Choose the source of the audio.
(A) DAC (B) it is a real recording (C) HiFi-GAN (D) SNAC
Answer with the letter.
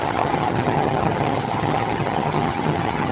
C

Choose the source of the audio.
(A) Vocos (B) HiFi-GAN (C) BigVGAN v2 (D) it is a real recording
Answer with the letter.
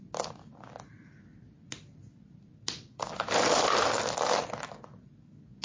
D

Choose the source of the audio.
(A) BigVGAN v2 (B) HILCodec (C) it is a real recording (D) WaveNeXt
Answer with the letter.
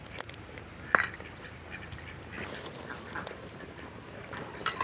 C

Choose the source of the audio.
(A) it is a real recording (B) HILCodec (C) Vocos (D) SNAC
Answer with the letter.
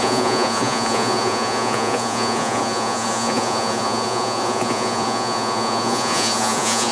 C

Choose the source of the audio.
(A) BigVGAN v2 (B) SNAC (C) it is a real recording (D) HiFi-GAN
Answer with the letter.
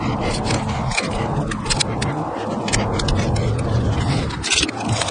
C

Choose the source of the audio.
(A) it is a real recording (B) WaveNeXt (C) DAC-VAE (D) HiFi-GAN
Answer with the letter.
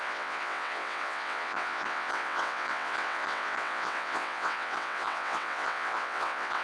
B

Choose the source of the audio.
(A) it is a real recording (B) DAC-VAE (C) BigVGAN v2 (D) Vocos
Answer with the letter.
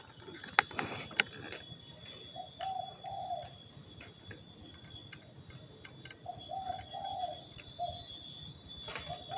A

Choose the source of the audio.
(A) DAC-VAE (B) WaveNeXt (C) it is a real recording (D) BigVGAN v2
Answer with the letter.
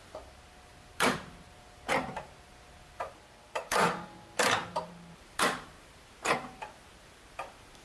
D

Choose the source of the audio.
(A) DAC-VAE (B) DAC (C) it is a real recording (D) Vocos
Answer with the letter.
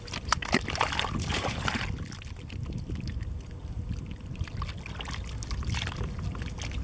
C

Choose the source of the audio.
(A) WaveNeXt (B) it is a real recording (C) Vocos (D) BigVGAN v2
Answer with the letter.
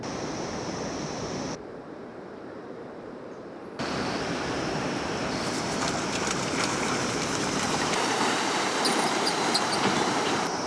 D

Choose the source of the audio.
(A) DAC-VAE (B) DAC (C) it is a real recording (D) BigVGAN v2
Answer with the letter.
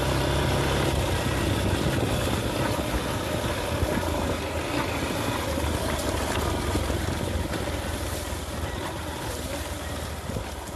C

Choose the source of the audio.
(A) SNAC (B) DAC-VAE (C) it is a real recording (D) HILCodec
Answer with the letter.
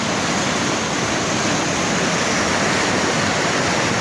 C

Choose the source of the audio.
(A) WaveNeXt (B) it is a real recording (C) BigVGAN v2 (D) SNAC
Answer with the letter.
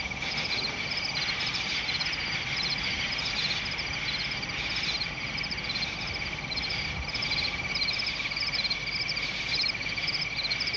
C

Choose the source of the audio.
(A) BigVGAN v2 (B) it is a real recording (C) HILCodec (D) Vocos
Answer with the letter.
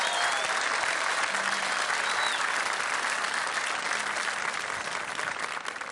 B